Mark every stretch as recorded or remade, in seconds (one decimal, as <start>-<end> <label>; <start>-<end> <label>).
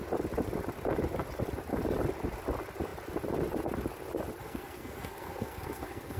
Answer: 0.0-4.4 recorded; 4.4-6.2 remade